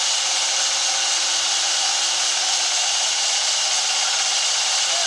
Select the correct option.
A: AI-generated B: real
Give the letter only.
B